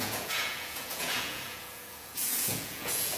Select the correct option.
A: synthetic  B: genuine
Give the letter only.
A